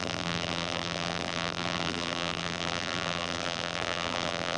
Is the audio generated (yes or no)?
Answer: yes